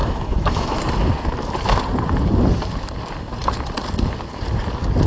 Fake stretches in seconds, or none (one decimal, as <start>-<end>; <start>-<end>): 0.0-0.8